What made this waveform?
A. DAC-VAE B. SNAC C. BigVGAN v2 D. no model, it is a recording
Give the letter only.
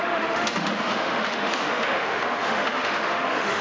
A